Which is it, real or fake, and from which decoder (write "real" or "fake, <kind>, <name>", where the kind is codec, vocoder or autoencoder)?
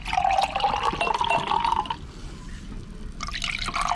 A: real